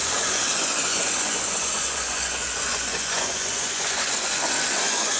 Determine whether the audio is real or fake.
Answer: fake